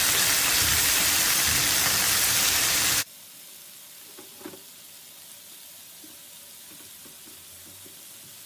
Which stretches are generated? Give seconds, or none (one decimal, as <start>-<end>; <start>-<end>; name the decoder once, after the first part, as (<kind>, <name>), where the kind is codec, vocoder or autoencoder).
none